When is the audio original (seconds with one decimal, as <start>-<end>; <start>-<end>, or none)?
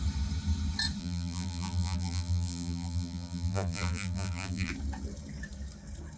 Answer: 0.0-1.0; 4.7-6.2